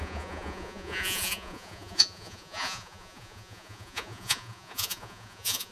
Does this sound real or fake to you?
fake